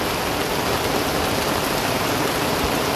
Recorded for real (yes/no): yes